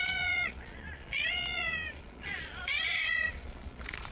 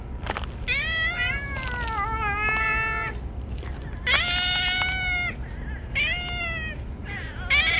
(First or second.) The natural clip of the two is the second